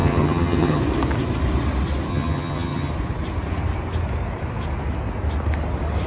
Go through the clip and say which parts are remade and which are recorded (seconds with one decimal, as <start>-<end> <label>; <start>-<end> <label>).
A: 0.0-0.8 remade; 0.8-2.1 recorded; 2.1-2.9 remade; 2.9-6.1 recorded

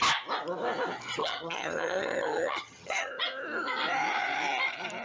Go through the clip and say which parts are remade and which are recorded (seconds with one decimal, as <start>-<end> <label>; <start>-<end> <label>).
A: 0.0-1.2 recorded; 1.2-3.1 remade; 3.1-5.0 recorded

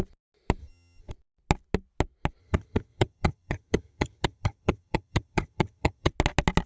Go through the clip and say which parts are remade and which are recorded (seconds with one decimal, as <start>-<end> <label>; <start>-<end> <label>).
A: 0.0-0.6 recorded; 0.6-1.1 remade; 1.1-2.4 recorded; 2.4-6.1 remade; 6.1-6.7 recorded

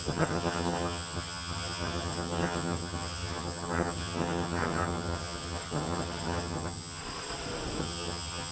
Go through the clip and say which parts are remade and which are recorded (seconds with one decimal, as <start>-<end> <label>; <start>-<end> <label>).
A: 0.0-7.0 remade; 7.0-7.8 recorded; 7.8-8.5 remade

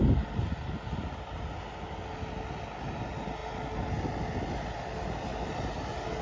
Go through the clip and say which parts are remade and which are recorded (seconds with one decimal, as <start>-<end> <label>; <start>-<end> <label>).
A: 0.0-6.2 recorded